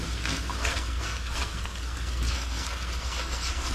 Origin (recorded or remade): remade